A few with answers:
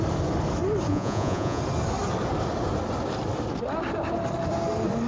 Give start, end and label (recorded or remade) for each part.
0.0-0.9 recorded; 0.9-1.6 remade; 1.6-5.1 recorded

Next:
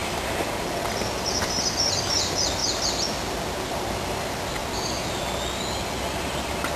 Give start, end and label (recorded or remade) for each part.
0.0-1.1 recorded; 1.1-2.6 remade; 2.6-3.2 recorded; 3.2-4.6 remade; 4.6-5.7 recorded; 5.7-6.8 remade

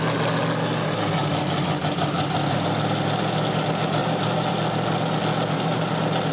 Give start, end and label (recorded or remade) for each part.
0.0-6.3 recorded

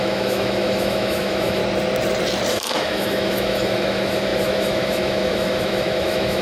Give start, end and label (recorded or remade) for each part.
0.0-1.6 remade; 1.6-2.5 recorded; 2.5-6.4 remade

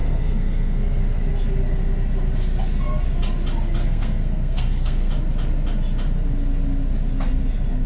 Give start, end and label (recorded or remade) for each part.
0.0-1.0 remade; 1.0-3.8 recorded; 3.8-5.1 remade; 5.1-7.9 recorded

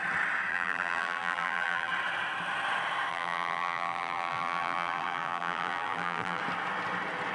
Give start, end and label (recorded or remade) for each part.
0.0-0.5 recorded; 0.5-1.9 remade; 1.9-3.1 recorded; 3.1-6.4 remade; 6.4-7.3 recorded

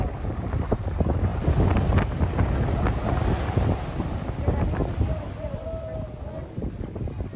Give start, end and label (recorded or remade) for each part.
0.0-7.4 recorded

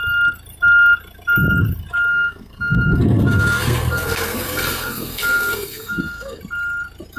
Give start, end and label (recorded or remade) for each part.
0.0-2.1 recorded; 2.1-6.4 remade; 6.4-7.2 recorded